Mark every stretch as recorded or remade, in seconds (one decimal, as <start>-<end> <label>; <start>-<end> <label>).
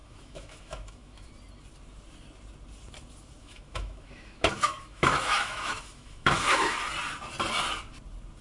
0.0-1.3 remade; 1.3-3.4 recorded; 3.4-6.8 remade; 6.8-8.4 recorded